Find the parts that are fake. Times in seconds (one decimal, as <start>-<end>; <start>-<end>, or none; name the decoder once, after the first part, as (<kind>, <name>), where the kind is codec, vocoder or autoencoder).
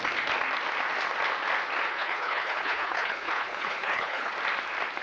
1.9-4.3 (codec, HILCodec)